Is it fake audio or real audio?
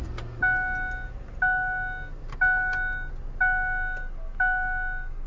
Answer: real